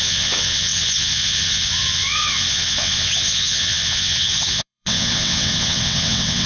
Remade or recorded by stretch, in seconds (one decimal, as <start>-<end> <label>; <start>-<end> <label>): 0.0-6.5 remade

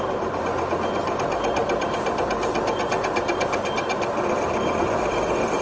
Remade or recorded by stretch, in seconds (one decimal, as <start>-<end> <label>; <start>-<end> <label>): 0.0-5.6 recorded

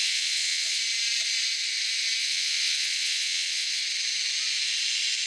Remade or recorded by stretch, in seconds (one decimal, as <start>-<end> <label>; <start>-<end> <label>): 0.0-0.8 remade; 0.8-2.2 recorded; 2.2-3.8 remade; 3.8-5.3 recorded

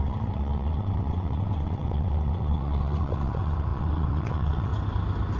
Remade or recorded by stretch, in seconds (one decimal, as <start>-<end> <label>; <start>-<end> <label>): 0.0-4.7 remade; 4.7-5.4 recorded